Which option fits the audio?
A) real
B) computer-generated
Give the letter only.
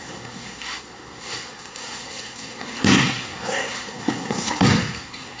B